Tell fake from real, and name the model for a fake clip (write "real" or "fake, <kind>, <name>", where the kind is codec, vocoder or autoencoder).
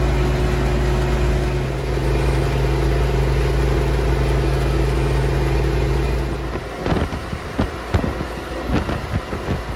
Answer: real